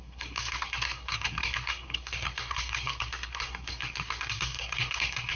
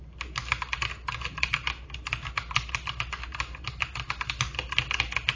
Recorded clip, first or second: second